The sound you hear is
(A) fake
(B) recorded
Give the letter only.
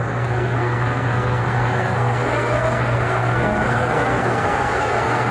A